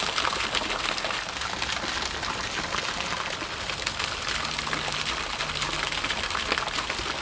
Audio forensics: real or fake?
real